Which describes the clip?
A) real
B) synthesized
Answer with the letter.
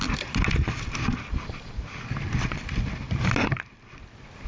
A